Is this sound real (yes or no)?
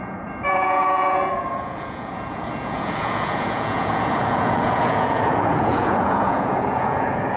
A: no